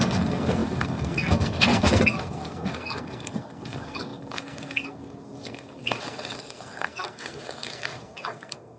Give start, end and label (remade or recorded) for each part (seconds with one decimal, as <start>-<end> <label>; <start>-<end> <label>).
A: 0.0-8.8 remade